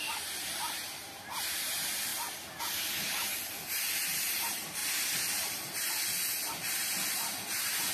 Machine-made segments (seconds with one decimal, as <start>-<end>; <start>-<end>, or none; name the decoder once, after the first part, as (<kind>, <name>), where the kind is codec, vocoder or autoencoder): 0.0-2.1 (vocoder, BigVGAN v2); 2.6-4.8; 6.5-7.9